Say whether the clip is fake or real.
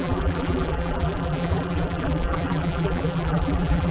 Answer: fake